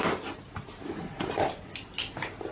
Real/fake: real